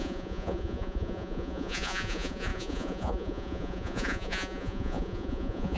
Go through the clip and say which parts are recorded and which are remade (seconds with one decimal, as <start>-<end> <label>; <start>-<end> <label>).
0.0-5.8 remade